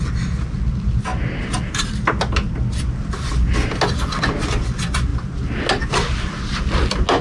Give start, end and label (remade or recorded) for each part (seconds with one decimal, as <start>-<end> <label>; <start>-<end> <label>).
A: 0.0-7.2 recorded